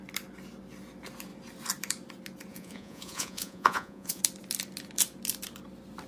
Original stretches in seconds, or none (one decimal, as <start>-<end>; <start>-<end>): 0.0-2.5; 4.2-6.1